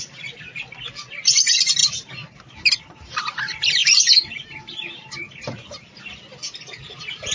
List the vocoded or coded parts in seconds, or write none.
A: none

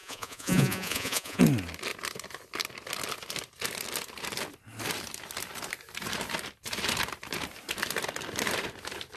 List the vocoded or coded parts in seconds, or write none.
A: 0.0-1.4 (vocoder, Vocos)

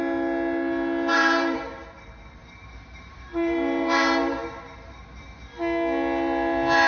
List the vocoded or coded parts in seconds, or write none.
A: 1.1-2.0 (vocoder, BigVGAN v2); 2.4-5.4

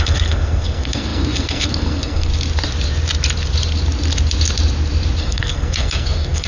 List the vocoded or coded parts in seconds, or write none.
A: 0.0-2.3 (codec, SNAC); 5.2-6.5

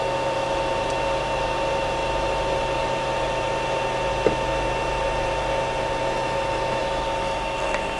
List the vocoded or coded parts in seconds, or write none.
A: none